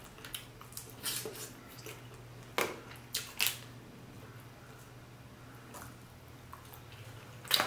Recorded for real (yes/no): yes